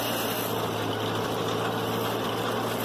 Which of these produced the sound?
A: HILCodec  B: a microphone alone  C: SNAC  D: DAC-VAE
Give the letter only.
B